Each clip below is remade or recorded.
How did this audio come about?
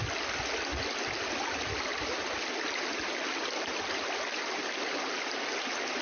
recorded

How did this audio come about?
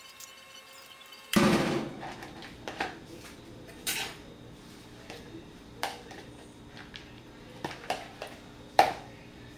remade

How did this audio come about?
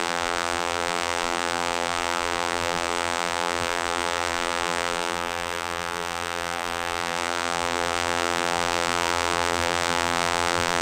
remade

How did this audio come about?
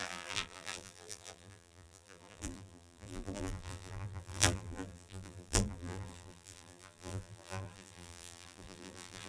remade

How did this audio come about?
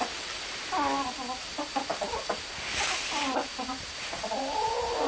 recorded